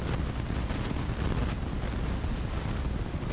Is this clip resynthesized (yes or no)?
no